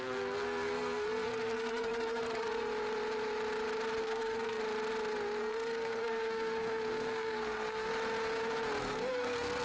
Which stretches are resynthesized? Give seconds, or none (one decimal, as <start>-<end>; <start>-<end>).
0.0-2.7; 4.0-4.6; 5.4-7.9; 8.8-9.6